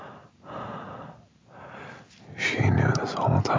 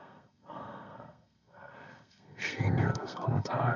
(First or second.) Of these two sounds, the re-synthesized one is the second